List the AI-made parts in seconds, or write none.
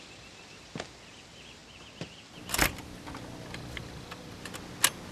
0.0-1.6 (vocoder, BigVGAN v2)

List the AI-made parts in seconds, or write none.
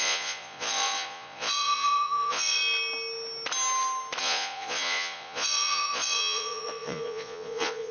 0.0-2.6 (vocoder, Vocos); 4.2-7.9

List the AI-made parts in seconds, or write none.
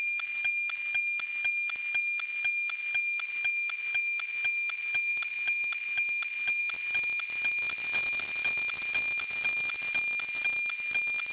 none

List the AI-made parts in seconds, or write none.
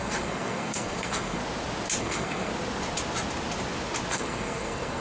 0.0-1.4 (codec, SNAC); 2.0-2.5; 4.1-5.0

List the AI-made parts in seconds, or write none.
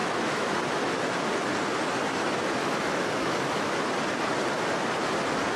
0.0-0.5 (autoencoder, DAC-VAE); 2.6-3.7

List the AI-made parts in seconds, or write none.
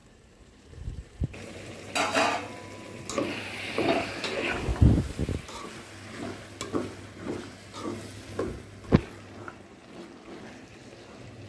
0.0-1.9 (vocoder, BigVGAN v2)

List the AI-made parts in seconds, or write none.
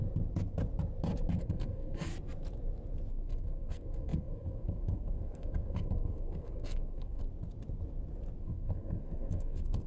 1.4-2.1 (codec, SNAC); 3.1-7.2; 8.4-9.9